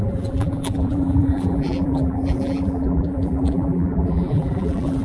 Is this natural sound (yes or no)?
no